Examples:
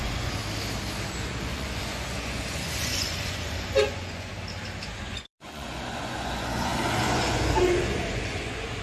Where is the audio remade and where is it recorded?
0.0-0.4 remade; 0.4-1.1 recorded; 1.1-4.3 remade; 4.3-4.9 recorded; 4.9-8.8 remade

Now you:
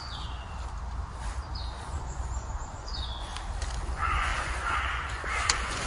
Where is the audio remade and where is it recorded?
0.0-0.4 remade; 0.4-1.8 recorded; 1.8-3.3 remade; 3.3-3.9 recorded; 3.9-5.9 remade

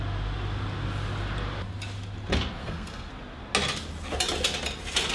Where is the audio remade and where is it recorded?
0.0-2.6 recorded; 2.6-3.1 remade; 3.1-5.1 recorded